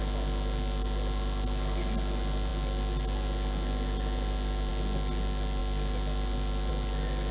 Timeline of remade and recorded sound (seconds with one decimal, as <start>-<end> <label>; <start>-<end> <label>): 0.0-7.3 recorded